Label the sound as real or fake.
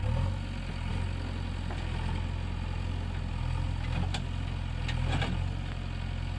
real